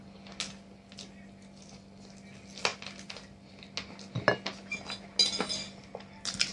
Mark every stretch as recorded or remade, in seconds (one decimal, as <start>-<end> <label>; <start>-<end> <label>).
0.0-6.5 recorded